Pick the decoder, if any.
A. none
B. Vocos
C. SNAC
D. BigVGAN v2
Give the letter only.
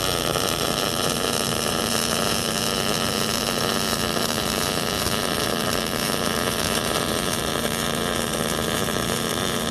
D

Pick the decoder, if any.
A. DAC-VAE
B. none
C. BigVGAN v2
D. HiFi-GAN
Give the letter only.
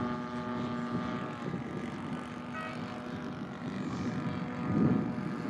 B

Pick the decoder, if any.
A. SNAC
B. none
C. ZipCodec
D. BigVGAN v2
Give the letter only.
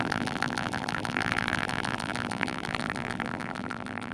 D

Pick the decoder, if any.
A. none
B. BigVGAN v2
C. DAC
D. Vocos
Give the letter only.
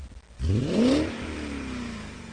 B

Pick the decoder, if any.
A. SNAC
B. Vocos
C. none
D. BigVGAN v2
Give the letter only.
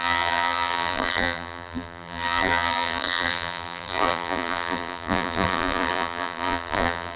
D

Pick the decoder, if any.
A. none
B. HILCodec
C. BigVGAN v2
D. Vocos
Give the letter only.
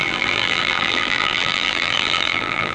C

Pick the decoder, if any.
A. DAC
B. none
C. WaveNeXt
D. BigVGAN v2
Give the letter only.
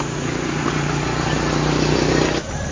B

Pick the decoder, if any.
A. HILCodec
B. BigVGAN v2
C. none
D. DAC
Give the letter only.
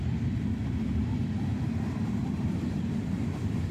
B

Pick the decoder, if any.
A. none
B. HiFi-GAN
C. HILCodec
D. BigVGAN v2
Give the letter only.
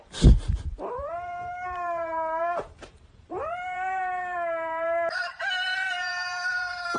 D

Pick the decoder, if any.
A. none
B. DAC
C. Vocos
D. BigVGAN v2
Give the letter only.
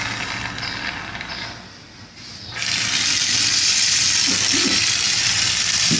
D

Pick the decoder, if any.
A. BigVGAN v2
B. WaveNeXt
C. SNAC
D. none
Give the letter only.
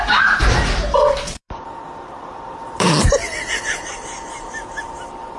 A